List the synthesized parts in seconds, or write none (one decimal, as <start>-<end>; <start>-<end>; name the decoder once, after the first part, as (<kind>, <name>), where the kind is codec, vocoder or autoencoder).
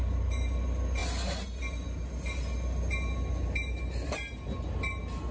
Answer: none